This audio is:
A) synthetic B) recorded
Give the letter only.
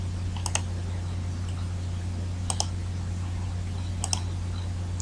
B